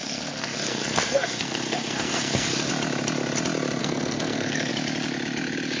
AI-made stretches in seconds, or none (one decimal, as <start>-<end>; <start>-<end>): 0.0-2.7; 3.8-4.7